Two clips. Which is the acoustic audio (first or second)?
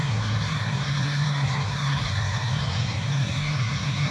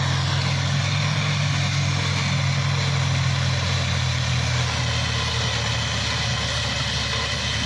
second